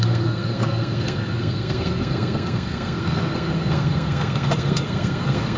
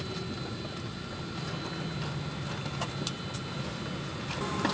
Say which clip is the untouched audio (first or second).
second